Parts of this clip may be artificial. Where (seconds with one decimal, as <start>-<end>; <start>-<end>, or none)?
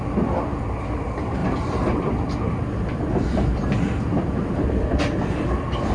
none